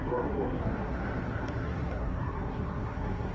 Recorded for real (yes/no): no